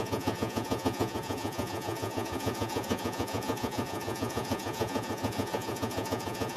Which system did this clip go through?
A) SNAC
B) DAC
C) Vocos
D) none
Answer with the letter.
C